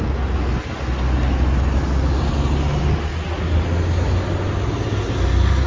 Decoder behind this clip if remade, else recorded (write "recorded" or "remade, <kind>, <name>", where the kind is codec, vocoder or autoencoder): recorded